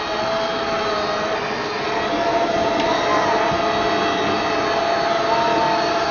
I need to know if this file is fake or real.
real